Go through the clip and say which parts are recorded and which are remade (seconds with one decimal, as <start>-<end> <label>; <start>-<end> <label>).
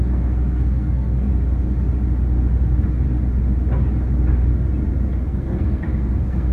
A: 0.0-1.3 remade; 1.3-5.2 recorded; 5.2-6.5 remade